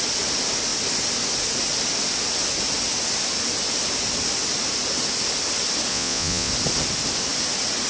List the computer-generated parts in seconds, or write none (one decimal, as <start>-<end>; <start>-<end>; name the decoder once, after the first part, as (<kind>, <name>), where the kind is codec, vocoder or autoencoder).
5.9-6.5 (vocoder, Vocos)